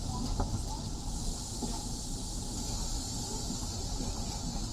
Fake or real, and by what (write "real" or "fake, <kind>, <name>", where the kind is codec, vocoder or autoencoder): real